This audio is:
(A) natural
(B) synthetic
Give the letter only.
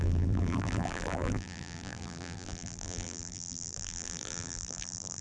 B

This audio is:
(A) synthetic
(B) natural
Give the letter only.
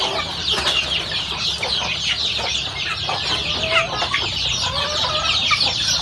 B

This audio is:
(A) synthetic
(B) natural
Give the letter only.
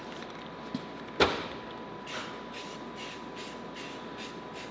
B